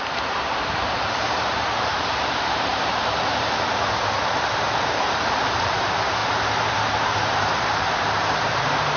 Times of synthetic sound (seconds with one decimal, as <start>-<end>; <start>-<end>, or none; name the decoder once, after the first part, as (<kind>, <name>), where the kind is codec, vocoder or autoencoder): 0.0-3.0 (vocoder, BigVGAN v2); 5.5-6.2; 6.7-9.0